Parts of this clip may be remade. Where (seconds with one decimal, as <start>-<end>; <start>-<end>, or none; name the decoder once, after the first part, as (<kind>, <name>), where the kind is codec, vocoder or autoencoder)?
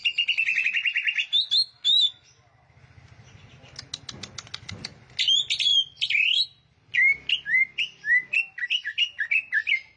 none